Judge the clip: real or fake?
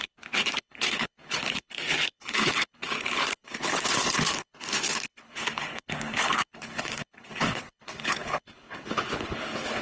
fake